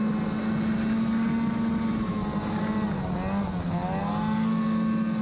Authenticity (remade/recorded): recorded